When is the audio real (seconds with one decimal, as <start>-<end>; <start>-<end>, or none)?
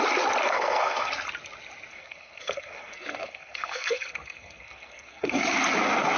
0.0-0.4; 1.1-1.9; 5.4-6.2